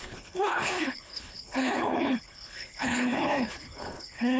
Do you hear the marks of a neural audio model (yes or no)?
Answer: yes